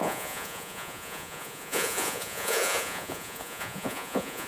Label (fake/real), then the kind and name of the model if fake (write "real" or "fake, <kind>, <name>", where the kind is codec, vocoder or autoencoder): fake, vocoder, Vocos